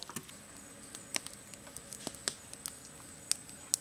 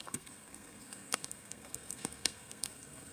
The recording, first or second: first